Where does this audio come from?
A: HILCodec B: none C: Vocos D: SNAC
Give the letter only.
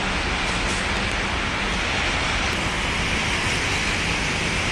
B